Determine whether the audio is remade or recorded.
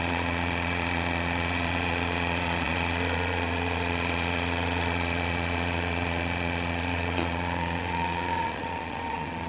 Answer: remade